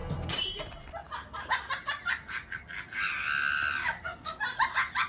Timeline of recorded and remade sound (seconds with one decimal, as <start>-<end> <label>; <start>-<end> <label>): 0.0-3.8 recorded; 3.8-4.4 remade; 4.4-5.1 recorded